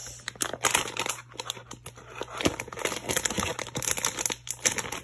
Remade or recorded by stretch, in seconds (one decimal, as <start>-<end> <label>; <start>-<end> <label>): 0.0-5.0 recorded